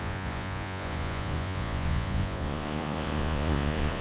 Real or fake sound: fake